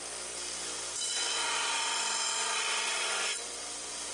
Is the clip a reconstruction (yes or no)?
no